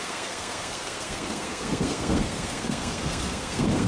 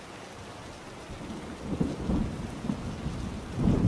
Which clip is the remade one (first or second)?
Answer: first